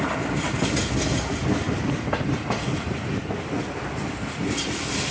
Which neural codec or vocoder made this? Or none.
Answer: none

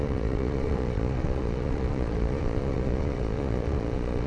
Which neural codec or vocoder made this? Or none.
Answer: vocoder, Vocos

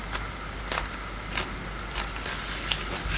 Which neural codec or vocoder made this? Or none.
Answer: none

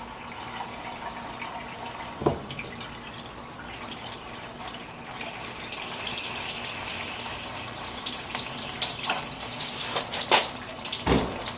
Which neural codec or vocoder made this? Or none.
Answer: none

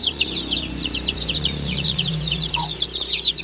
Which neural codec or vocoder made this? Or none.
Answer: vocoder, Vocos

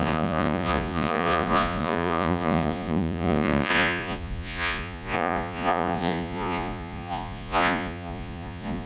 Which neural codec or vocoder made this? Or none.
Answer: vocoder, Vocos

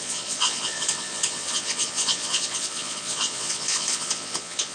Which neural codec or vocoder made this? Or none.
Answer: vocoder, Vocos